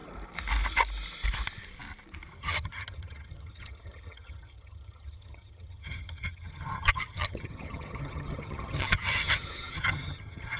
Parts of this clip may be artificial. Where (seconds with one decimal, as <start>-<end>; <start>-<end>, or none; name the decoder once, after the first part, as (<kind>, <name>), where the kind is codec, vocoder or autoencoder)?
2.4-10.6 (vocoder, HiFi-GAN)